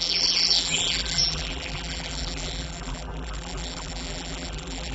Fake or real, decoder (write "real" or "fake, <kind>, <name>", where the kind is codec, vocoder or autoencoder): fake, vocoder, BigVGAN v2